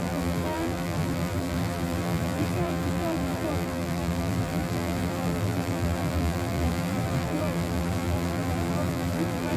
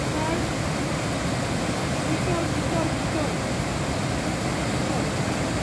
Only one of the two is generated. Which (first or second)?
first